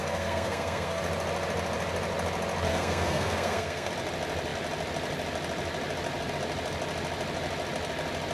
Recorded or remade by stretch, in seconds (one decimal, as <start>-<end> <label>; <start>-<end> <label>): 0.0-1.0 remade; 1.0-2.7 recorded; 2.7-3.9 remade; 3.9-8.3 recorded